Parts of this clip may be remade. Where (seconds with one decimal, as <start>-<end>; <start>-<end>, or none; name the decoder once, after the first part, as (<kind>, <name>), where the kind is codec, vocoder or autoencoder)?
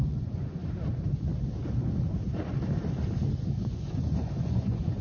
0.0-0.6 (vocoder, Vocos); 3.6-5.0